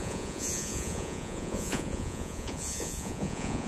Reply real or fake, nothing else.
fake